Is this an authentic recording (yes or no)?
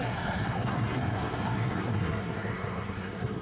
no